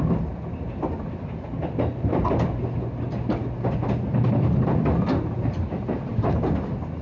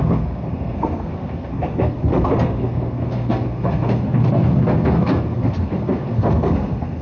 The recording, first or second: first